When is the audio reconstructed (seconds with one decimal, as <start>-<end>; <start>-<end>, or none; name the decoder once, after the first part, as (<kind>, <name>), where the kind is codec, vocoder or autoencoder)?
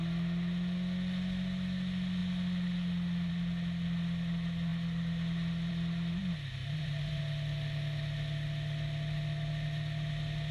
6.6-7.2 (vocoder, BigVGAN v2)